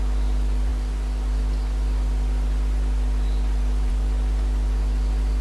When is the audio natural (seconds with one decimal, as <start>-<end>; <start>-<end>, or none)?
0.0-5.4